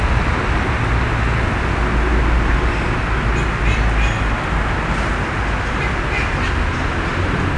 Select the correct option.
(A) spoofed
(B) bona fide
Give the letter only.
B